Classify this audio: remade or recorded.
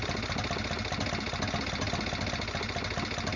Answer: recorded